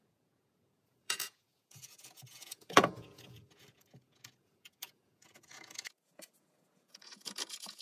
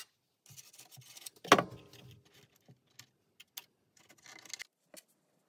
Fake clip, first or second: first